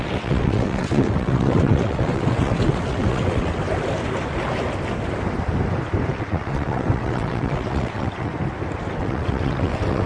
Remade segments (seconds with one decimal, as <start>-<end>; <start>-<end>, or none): 0.0-3.6; 6.1-8.3; 9.0-10.1